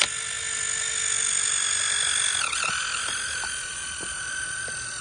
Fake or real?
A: real